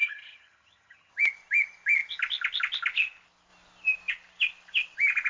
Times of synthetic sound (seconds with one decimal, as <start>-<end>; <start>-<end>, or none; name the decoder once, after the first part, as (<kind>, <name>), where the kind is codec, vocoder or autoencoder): 0.0-1.1 (vocoder, HiFi-GAN)